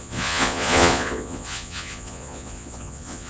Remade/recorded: remade